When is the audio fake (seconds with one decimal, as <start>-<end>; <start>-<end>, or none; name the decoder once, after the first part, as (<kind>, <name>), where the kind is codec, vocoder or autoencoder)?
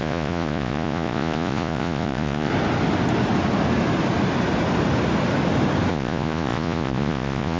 0.0-2.5 (vocoder, Vocos); 5.9-7.6